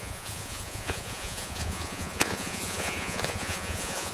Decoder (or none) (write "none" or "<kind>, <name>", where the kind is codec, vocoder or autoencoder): vocoder, Vocos